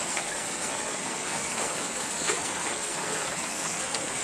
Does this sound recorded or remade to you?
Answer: remade